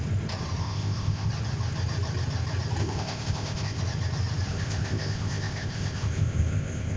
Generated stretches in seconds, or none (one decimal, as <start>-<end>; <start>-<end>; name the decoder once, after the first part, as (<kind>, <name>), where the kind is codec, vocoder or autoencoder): 0.6-1.3 (codec, ZipCodec); 2.8-3.8; 4.5-7.0